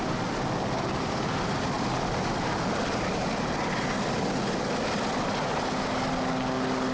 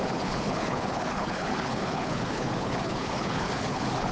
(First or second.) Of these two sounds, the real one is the first